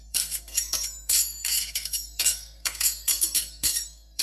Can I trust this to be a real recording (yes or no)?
no